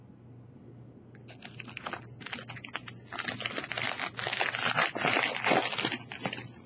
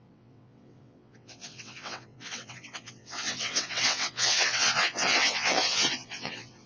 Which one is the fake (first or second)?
second